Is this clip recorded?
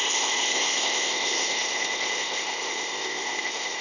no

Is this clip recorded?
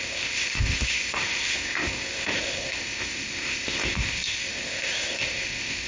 no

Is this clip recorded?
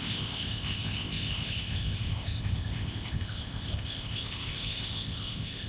no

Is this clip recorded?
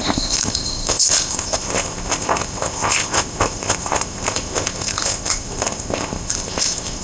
no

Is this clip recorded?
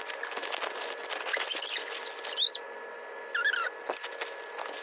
yes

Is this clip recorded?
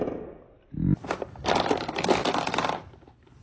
yes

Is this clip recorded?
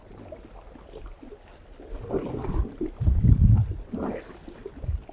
yes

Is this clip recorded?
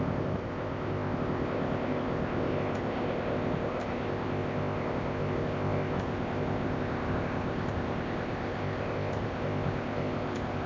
no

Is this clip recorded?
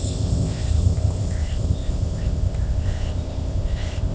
no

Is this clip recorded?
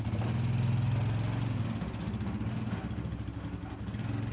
yes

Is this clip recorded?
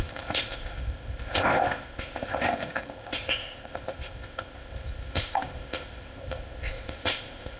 no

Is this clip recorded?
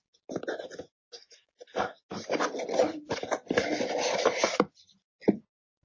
yes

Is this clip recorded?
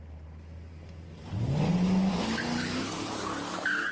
yes